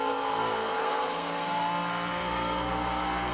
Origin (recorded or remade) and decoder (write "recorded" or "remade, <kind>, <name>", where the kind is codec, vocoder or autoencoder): remade, codec, SNAC